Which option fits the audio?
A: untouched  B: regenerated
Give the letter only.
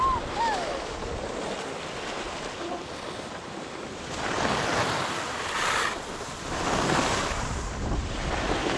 A